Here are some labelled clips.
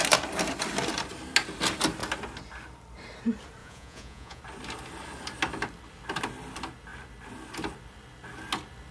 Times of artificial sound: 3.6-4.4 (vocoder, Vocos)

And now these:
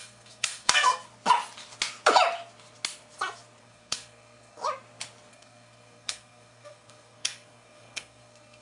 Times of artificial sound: 0.0-0.9 (codec, SNAC); 3.6-4.6; 5.3-8.6